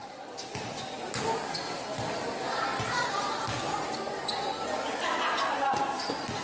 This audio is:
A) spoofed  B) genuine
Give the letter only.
B